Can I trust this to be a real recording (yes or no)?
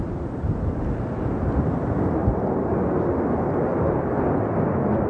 yes